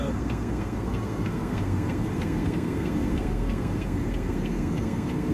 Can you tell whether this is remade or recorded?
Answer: remade